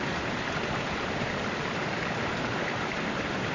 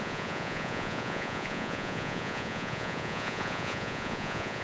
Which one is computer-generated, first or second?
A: second